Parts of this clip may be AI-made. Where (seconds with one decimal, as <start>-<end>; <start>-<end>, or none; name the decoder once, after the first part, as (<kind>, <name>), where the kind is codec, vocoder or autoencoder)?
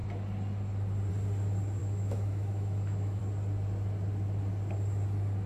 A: 1.8-3.2 (autoencoder, DAC-VAE)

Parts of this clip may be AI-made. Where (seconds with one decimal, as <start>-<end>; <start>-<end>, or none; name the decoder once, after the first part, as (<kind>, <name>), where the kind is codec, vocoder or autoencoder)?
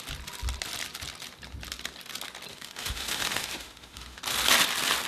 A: 2.5-4.2 (autoencoder, DAC-VAE)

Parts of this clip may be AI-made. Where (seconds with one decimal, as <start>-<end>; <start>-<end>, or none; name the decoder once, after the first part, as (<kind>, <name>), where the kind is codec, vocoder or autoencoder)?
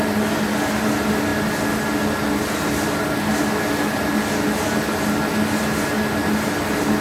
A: none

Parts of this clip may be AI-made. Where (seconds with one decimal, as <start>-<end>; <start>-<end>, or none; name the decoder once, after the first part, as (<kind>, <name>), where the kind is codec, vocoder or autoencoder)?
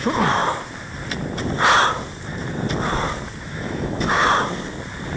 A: 0.0-0.4 (autoencoder, DAC-VAE); 3.4-4.2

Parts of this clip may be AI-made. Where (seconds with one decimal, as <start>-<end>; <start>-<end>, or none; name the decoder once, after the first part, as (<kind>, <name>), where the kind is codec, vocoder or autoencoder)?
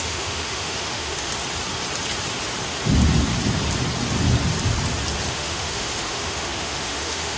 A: 0.0-1.3 (autoencoder, DAC-VAE); 5.3-7.4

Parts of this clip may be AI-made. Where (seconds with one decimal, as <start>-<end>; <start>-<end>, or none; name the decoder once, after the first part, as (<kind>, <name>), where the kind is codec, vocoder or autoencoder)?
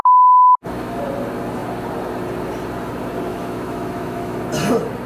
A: 0.0-1.0 (autoencoder, DAC-VAE); 3.3-4.4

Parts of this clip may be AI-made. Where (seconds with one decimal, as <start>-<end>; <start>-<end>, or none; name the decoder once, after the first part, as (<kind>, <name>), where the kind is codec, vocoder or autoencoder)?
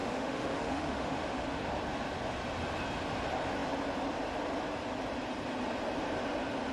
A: 0.0-1.6 (autoencoder, DAC-VAE)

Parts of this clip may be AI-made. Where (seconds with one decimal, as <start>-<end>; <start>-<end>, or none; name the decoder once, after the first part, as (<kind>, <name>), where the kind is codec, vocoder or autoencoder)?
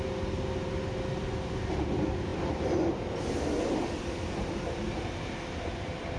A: none